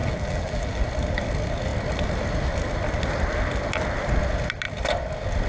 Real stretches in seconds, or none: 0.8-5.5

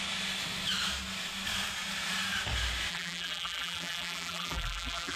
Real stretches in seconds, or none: 0.0-2.9

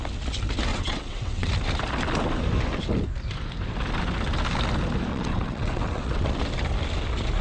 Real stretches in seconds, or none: 0.0-0.7; 1.5-5.1; 6.4-7.4